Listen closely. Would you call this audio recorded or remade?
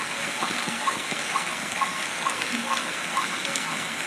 remade